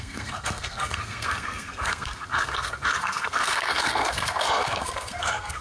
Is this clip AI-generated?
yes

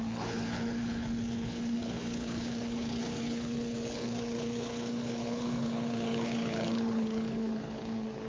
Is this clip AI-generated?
yes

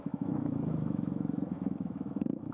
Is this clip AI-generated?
yes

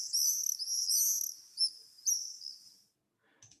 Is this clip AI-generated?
no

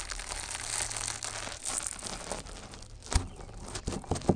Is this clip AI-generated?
no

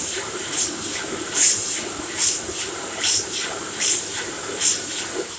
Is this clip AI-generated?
yes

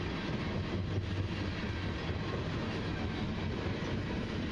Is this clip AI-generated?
no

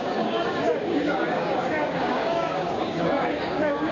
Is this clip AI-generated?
yes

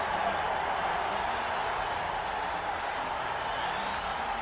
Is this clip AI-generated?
no